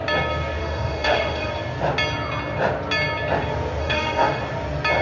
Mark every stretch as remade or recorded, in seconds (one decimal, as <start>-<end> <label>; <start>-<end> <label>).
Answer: 0.0-0.6 recorded; 0.6-1.5 remade; 1.5-3.8 recorded; 3.8-4.4 remade; 4.4-5.0 recorded